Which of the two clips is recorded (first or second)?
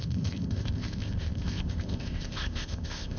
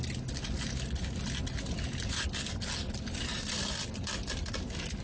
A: second